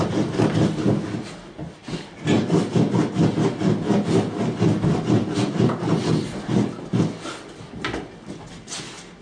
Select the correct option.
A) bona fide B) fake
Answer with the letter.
A